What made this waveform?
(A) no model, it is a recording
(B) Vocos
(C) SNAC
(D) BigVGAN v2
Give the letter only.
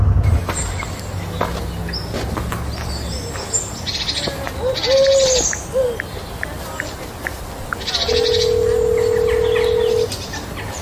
A